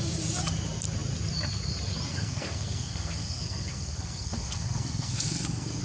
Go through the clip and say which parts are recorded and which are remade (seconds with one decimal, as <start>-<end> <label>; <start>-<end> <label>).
0.0-2.1 recorded; 2.1-5.8 remade